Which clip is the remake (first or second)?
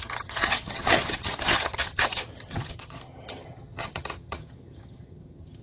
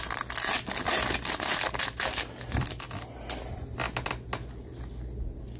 first